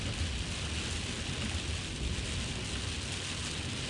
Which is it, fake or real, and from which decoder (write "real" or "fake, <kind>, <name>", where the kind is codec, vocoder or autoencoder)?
real